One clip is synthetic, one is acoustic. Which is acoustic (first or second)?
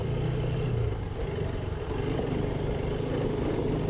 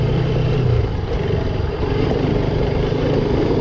first